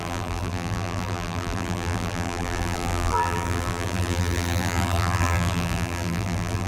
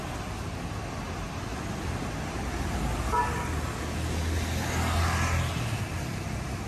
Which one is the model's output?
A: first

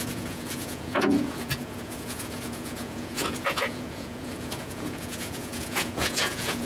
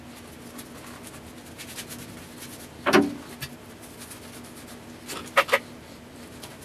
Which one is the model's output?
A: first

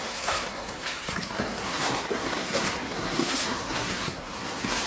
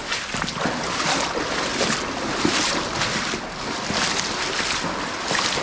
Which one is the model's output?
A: first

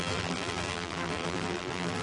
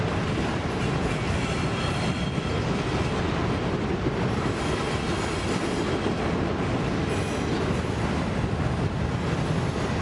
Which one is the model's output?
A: first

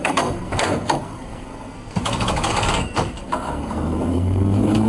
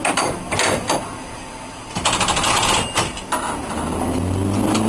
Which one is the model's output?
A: first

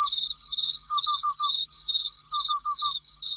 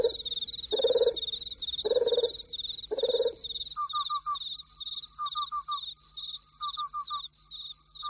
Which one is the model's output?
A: first